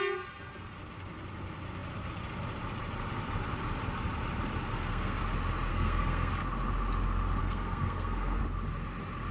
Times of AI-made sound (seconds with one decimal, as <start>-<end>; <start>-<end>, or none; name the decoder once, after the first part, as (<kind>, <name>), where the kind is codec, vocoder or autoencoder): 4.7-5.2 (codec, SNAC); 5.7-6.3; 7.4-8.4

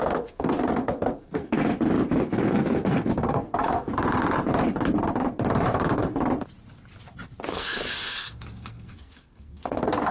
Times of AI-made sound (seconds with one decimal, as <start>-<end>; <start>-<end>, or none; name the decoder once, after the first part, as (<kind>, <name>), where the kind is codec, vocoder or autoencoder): 0.0-1.6 (codec, SNAC); 2.2-3.9; 7.5-10.1

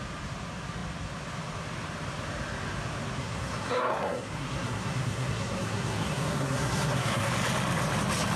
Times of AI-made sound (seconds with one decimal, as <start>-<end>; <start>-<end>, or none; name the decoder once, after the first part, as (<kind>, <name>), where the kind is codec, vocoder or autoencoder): 3.2-7.3 (codec, SNAC)

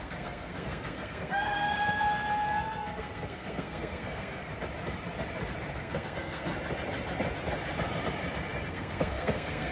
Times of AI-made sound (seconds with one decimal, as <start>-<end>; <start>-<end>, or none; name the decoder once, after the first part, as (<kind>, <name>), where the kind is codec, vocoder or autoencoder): 0.0-4.5 (codec, SNAC); 5.7-6.5; 8.7-9.7

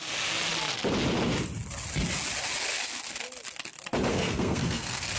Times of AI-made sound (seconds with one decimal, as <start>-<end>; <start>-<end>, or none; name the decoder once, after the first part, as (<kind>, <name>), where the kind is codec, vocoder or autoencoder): 4.1-5.2 (codec, SNAC)